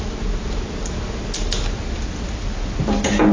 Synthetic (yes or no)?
no